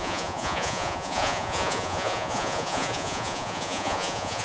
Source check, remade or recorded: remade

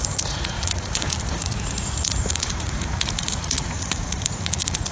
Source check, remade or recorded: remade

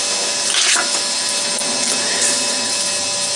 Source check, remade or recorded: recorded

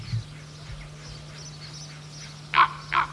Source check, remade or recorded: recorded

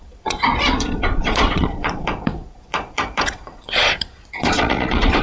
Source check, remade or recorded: remade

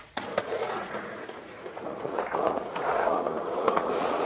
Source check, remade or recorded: remade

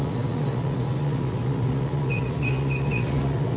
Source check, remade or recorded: remade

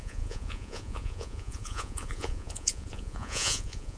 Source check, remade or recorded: remade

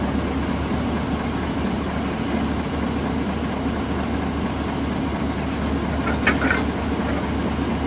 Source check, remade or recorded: recorded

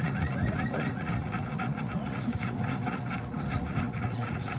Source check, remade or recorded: remade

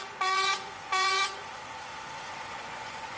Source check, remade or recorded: remade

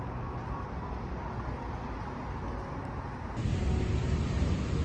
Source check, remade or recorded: recorded